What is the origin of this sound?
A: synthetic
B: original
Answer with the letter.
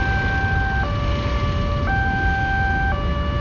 B